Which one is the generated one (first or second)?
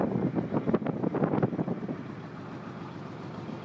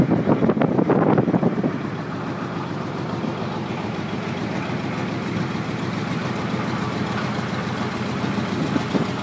second